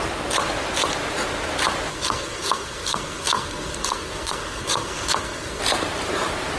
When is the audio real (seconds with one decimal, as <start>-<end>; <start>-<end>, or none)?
0.0-1.9; 5.6-6.6